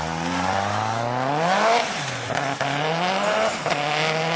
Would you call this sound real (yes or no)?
yes